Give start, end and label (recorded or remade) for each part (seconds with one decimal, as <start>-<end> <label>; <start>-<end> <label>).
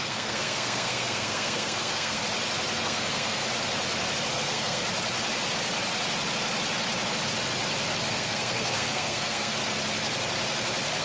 0.0-2.2 remade; 2.2-2.7 recorded; 2.7-3.4 remade; 3.4-4.3 recorded; 4.3-4.8 remade; 4.8-8.0 recorded; 8.0-9.6 remade; 9.6-11.0 recorded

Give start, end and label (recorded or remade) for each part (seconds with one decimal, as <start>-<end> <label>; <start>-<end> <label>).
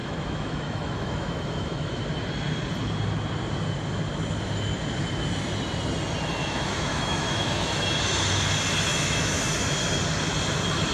0.0-2.0 remade; 2.0-6.4 recorded; 6.4-8.0 remade; 8.0-8.9 recorded; 8.9-9.4 remade; 9.4-10.9 recorded